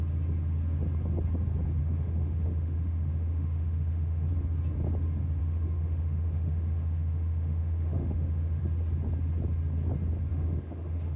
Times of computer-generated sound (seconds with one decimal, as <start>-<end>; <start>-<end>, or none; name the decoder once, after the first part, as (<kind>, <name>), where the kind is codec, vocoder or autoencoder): 1.8-4.3 (autoencoder, DAC-VAE); 5.4-8.6; 10.3-11.2